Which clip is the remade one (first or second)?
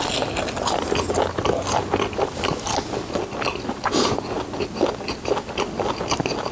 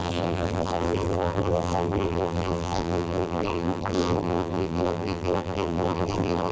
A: second